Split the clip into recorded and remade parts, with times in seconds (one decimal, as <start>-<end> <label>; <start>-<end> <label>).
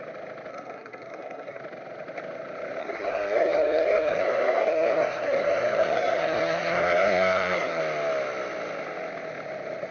0.0-0.5 recorded; 0.5-1.6 remade; 1.6-2.8 recorded; 2.8-7.8 remade; 7.8-9.9 recorded